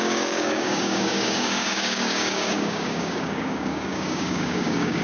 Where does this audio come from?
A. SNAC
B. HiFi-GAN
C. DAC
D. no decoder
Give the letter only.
C